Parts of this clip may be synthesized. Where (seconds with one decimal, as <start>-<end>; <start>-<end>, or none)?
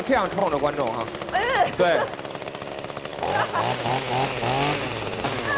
none